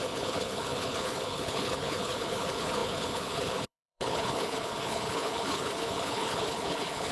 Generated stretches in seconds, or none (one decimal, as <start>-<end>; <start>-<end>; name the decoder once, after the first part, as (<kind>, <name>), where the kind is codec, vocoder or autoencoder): 0.0-7.1 (codec, HILCodec)